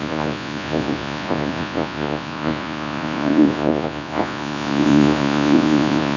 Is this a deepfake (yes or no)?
yes